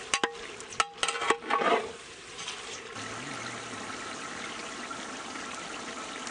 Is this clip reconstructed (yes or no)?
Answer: no